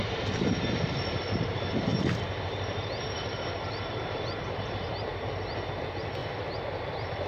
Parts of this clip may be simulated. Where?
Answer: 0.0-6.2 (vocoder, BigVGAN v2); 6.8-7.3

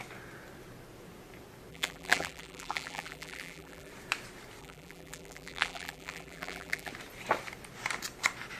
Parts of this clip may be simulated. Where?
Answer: 1.7-3.9 (vocoder, BigVGAN v2); 4.6-6.9

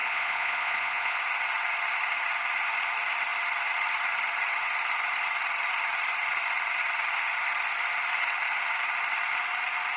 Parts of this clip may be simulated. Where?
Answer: 0.0-1.2 (vocoder, Vocos)

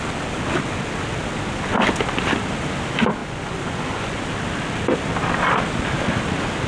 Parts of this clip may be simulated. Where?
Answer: 3.2-4.2 (vocoder, Vocos)